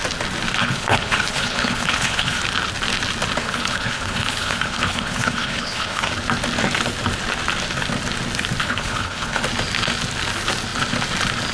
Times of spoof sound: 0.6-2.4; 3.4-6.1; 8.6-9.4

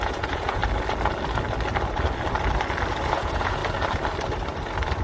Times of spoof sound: 0.0-0.6; 3.1-3.6

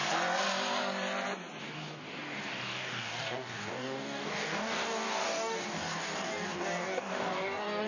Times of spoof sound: 1.6-7.9

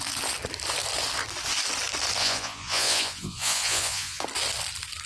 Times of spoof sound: 2.2-4.2

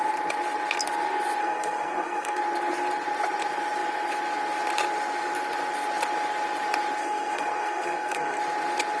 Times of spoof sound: 1.4-2.4; 7.0-8.4

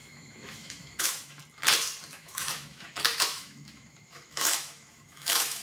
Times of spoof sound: 0.0-1.4; 2.1-5.6